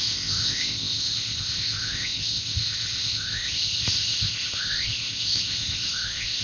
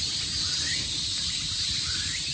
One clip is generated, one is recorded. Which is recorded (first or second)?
second